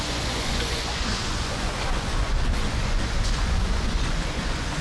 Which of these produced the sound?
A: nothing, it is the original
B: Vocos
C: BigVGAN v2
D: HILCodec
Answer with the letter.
B